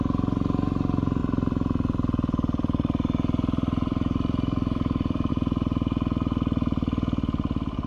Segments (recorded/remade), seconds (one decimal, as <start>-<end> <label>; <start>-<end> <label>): 0.0-1.2 recorded; 1.2-5.3 remade; 5.3-7.9 recorded